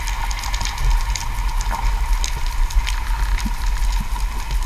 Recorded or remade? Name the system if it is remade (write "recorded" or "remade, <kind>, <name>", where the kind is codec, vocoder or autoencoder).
recorded